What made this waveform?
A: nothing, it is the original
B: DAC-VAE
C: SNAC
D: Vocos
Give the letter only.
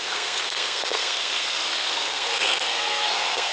C